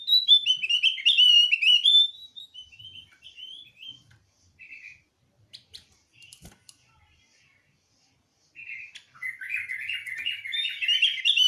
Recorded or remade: remade